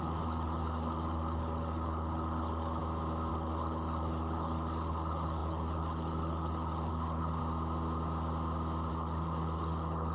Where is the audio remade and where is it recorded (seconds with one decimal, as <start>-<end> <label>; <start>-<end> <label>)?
0.0-2.8 remade; 2.8-3.3 recorded; 3.3-7.4 remade; 7.4-8.9 recorded; 8.9-10.1 remade